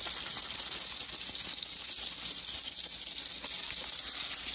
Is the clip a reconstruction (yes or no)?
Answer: no